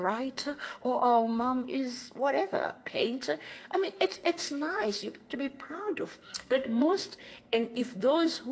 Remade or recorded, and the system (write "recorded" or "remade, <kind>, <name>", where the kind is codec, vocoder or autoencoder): remade, codec, SNAC